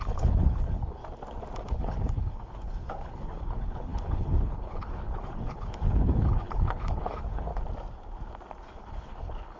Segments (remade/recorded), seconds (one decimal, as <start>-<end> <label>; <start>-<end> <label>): 0.0-1.0 remade; 1.0-1.7 recorded; 1.7-7.5 remade; 7.5-8.6 recorded; 8.6-9.6 remade